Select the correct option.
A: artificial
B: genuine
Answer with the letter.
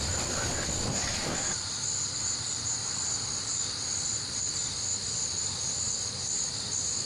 B